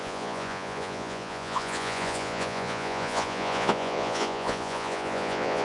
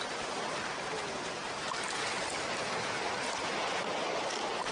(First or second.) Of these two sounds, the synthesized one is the first